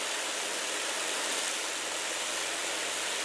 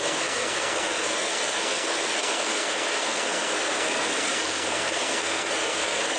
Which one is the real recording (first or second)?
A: first